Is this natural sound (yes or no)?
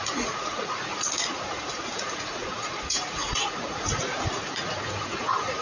no